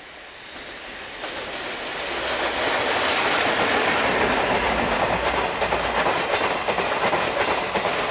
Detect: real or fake real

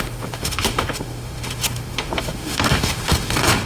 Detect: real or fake fake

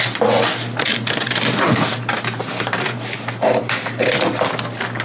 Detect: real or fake real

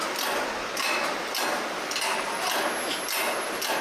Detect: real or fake real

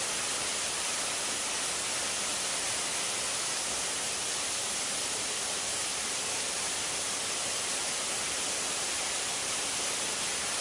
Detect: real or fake real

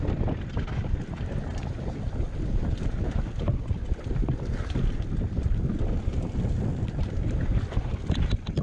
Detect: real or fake real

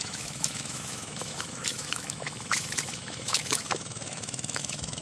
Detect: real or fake fake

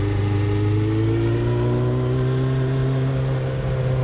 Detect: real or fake real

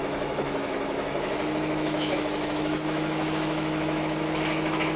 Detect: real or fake fake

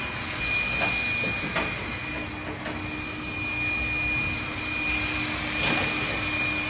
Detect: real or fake real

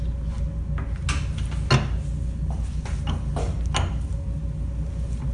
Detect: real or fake real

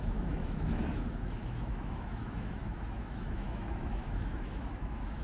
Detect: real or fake fake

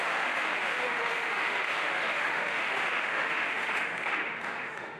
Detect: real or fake fake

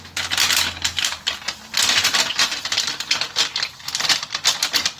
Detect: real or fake real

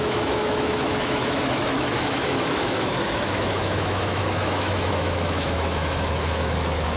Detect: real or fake fake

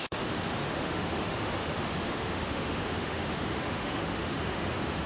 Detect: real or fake fake